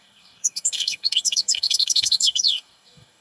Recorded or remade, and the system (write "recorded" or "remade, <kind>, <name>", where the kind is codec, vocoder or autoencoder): remade, codec, DAC